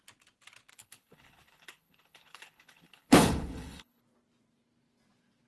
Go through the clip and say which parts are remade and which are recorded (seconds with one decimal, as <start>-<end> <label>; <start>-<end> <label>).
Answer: 0.0-0.7 recorded; 0.7-4.0 remade; 4.0-5.5 recorded